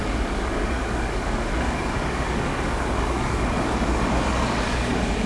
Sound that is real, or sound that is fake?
fake